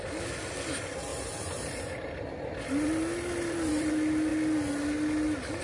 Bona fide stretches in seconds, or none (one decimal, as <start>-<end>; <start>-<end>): 0.0-1.1; 3.9-5.6